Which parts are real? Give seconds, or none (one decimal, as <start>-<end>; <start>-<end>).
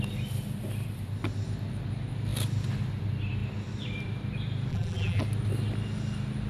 0.0-4.7; 5.2-6.5